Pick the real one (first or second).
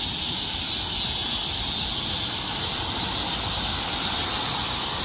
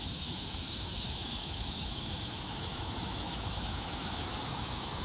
first